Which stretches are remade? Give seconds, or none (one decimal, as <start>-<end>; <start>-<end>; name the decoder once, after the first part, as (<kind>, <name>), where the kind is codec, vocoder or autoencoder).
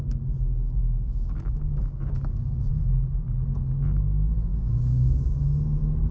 0.8-2.7 (codec, DAC); 4.5-5.4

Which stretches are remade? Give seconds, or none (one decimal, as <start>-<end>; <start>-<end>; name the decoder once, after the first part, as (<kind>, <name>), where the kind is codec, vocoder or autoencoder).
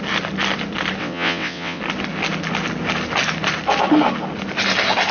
1.0-1.8 (vocoder, WaveNeXt)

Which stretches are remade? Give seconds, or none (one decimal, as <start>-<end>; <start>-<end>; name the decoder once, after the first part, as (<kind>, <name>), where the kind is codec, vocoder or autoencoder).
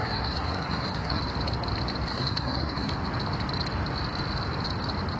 0.0-1.2 (codec, SNAC); 2.1-2.9